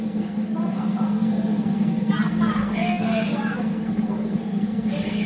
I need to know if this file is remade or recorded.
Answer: remade